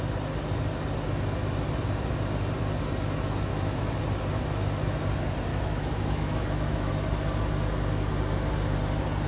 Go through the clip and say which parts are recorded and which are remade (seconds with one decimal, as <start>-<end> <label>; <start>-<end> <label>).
0.0-3.5 recorded; 3.5-4.0 remade; 4.0-5.5 recorded; 5.5-6.9 remade; 6.9-9.3 recorded